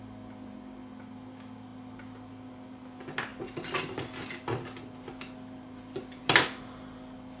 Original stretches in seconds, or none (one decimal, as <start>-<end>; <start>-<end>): 0.0-7.4